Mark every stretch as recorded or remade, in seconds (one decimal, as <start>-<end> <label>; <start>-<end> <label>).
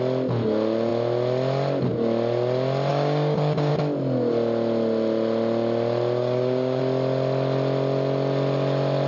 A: 0.0-2.9 recorded; 2.9-3.7 remade; 3.7-6.2 recorded; 6.2-6.8 remade; 6.8-9.1 recorded